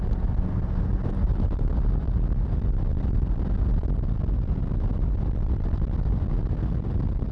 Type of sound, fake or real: real